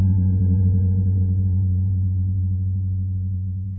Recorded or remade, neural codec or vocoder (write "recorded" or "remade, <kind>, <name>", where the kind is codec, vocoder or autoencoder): remade, vocoder, Vocos